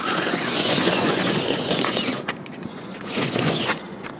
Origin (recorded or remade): remade